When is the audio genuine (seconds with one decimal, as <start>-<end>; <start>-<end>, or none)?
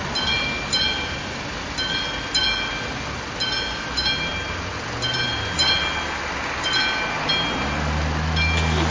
0.0-8.9